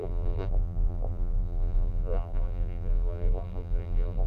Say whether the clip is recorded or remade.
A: remade